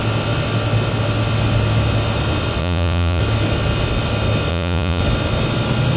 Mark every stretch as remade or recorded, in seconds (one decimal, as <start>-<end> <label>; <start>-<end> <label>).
0.0-2.6 recorded; 2.6-3.2 remade; 3.2-4.5 recorded; 4.5-5.0 remade; 5.0-6.0 recorded